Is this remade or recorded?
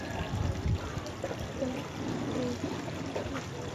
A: recorded